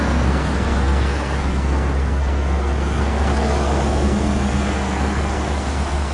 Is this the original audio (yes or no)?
no